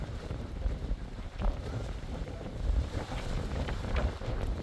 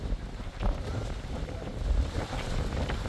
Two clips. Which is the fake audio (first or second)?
first